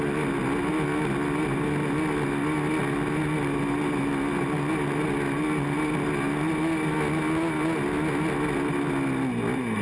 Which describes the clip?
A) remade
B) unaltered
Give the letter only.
B